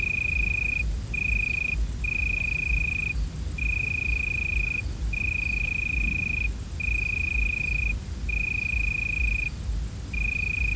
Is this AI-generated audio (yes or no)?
no